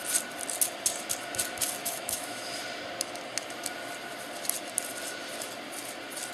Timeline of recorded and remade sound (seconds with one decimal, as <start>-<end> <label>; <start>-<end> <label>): 0.0-1.8 recorded; 1.8-2.5 remade; 2.5-6.3 recorded